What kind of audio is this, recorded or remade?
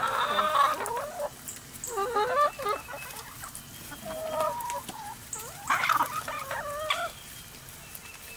recorded